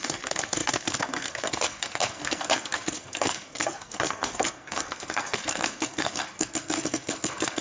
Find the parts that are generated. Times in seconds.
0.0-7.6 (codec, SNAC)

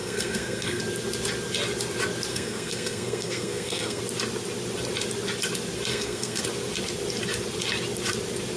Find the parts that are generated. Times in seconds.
0.0-0.8 (codec, SNAC); 2.3-4.0; 5.9-6.4